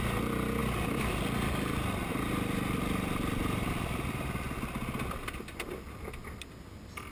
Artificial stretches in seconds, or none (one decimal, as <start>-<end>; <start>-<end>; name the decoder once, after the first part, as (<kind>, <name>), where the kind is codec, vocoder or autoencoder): none